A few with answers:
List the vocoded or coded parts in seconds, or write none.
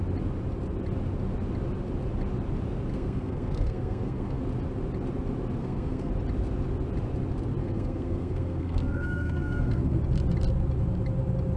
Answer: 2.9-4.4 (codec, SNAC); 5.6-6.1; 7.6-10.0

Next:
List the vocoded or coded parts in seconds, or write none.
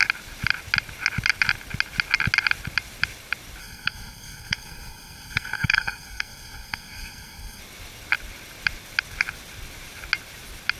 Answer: 3.6-7.6 (codec, SNAC)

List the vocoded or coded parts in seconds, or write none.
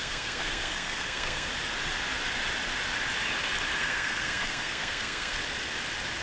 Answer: 0.0-1.5 (codec, SNAC); 3.8-5.4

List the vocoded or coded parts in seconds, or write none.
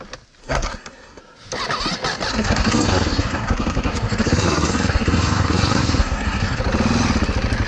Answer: 0.4-1.2 (codec, SNAC); 2.3-6.6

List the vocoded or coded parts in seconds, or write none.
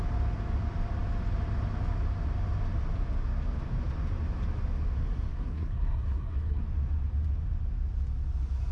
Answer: 5.3-6.6 (codec, SNAC)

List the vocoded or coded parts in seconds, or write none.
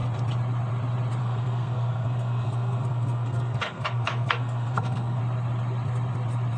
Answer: 1.2-5.2 (codec, SNAC)